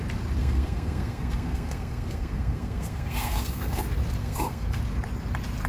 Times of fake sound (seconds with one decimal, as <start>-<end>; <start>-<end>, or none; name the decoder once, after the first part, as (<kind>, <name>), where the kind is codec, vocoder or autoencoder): 0.4-3.8 (codec, SNAC); 4.2-4.8